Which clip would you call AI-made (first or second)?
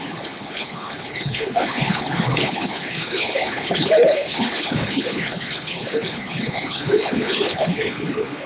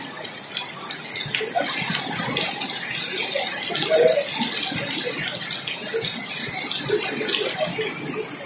first